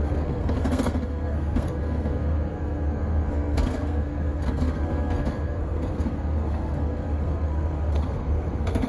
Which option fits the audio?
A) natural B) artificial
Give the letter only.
B